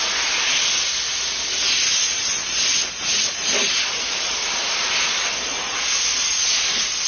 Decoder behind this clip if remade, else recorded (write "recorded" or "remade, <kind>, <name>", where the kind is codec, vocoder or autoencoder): recorded